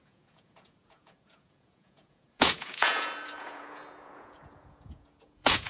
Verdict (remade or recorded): remade